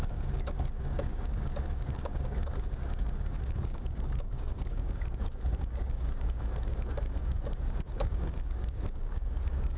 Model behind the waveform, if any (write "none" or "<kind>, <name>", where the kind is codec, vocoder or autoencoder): codec, DAC